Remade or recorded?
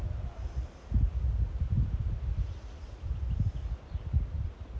recorded